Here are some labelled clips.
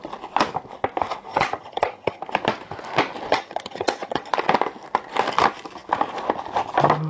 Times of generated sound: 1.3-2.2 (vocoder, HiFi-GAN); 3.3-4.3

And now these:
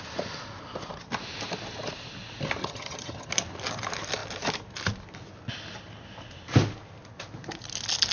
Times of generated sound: 2.6-3.3 (vocoder, HiFi-GAN)

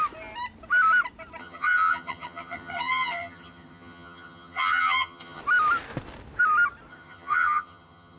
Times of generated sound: 1.4-5.4 (vocoder, HiFi-GAN); 6.9-8.2

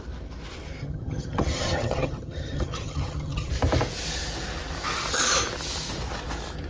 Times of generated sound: 0.8-3.5 (vocoder, HiFi-GAN)

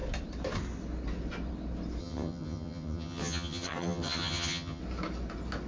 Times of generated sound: 2.0-4.8 (vocoder, HiFi-GAN)

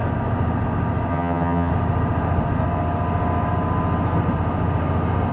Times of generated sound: 1.1-1.7 (vocoder, HiFi-GAN)